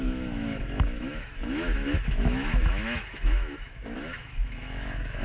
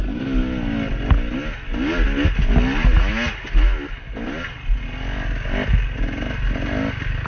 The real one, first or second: second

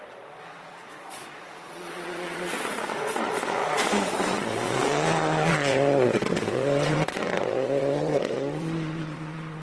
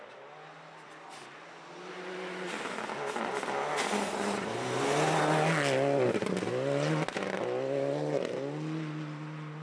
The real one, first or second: second